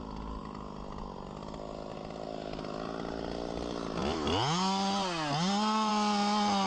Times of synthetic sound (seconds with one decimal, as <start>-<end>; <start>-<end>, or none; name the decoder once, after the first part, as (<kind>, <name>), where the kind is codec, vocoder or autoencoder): none